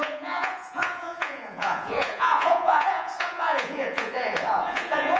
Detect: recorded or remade remade